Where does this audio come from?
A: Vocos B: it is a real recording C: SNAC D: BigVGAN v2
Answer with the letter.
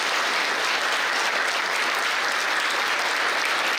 B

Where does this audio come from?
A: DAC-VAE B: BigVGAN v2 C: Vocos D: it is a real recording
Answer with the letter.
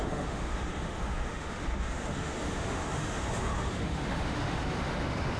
A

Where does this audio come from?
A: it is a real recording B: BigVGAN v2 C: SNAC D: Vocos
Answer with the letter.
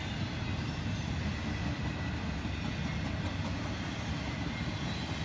A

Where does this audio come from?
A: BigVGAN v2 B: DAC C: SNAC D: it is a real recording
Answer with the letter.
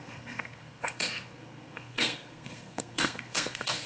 C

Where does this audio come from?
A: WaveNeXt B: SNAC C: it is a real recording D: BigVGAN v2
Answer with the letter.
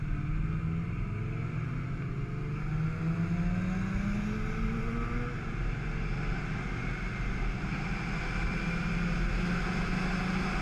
C